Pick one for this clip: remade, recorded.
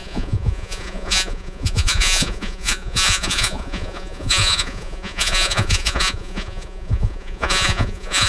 remade